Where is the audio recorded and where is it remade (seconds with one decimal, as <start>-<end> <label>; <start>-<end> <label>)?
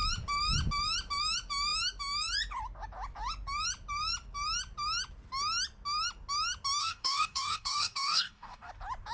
0.0-6.8 recorded; 6.8-8.7 remade; 8.7-9.1 recorded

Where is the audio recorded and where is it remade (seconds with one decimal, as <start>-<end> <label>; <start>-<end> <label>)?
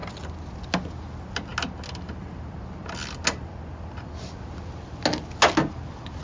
0.0-6.2 recorded